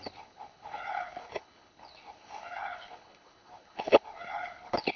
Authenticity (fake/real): fake